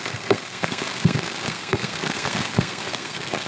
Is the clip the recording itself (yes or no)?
no